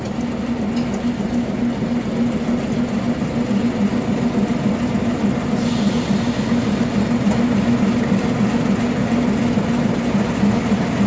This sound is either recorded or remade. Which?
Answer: recorded